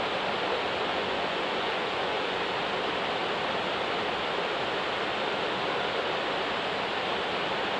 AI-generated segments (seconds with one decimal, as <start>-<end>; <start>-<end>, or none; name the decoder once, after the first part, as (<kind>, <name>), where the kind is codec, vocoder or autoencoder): 0.9-2.4 (vocoder, Vocos)